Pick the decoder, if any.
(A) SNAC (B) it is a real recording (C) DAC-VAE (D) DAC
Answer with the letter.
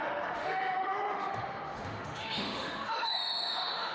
C